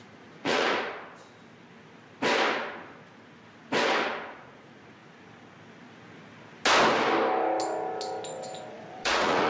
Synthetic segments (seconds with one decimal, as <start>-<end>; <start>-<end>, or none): 0.0-0.9; 4.3-5.0; 8.7-9.5